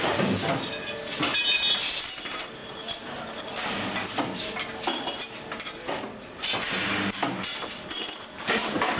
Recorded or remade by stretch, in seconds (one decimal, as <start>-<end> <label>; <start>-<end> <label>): 0.0-9.0 recorded